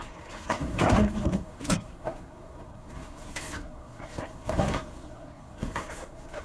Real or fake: fake